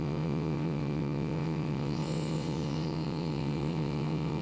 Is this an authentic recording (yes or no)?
no